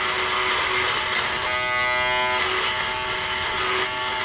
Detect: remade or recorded recorded